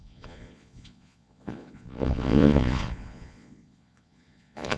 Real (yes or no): no